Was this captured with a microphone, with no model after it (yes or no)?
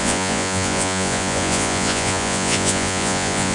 no